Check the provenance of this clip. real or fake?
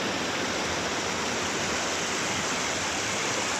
real